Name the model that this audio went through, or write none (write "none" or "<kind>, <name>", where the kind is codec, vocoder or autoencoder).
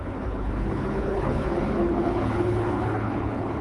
codec, HILCodec